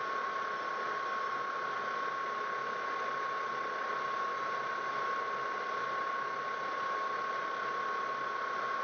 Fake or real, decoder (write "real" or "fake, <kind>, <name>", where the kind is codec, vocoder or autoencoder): real